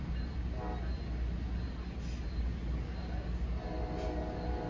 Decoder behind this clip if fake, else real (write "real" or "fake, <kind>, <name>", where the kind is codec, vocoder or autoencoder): real